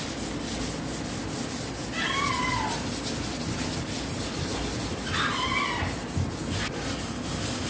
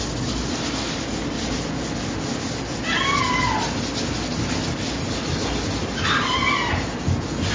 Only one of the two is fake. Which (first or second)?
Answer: first